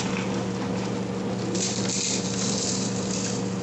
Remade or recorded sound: recorded